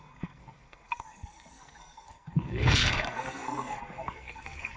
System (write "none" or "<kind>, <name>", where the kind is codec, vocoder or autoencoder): codec, SNAC